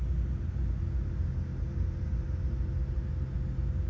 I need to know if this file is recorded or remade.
recorded